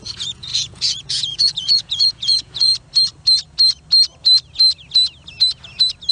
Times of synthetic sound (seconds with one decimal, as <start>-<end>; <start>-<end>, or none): 0.0-2.7

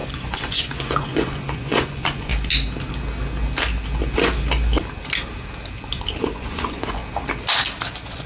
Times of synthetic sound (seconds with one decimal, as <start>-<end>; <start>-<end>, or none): 0.0-2.3; 6.2-7.0; 7.9-8.3

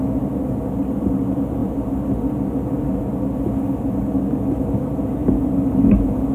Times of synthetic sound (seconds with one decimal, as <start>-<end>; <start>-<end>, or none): none

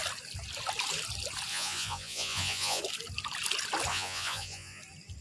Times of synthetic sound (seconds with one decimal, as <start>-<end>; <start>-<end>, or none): 1.5-2.8; 3.9-4.8

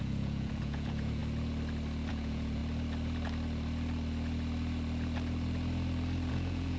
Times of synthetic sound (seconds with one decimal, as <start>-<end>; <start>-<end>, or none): 0.0-1.2; 2.1-2.6; 6.3-6.8

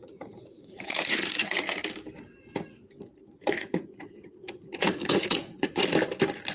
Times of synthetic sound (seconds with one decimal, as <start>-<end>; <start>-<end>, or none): 0.0-1.8; 3.5-5.8

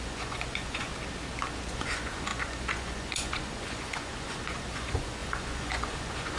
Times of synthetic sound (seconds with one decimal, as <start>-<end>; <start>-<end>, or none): 0.0-0.9; 1.7-6.4